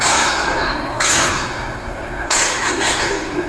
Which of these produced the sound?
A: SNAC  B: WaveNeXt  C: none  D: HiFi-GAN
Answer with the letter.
A